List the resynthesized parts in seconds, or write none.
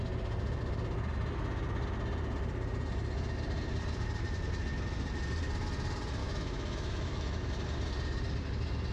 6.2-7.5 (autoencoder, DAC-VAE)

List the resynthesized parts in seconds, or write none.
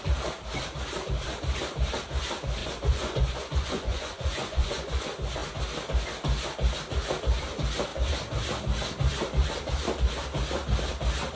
2.6-5.0 (vocoder, Vocos)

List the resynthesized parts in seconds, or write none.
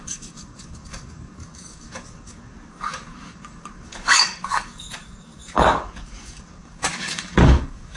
0.0-8.0 (codec, DAC)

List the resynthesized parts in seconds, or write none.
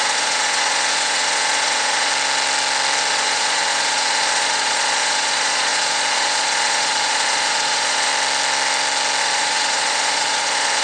0.0-2.1 (vocoder, Vocos); 3.1-8.1; 9.2-10.8